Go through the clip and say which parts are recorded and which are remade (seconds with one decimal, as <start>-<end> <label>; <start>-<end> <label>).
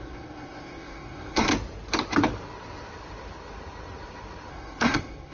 0.0-1.5 remade; 1.5-4.5 recorded; 4.5-5.3 remade